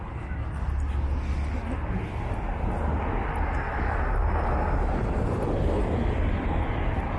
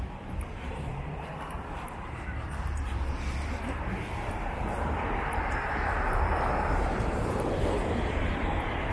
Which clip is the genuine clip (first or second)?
first